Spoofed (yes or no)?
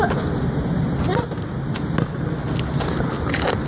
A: no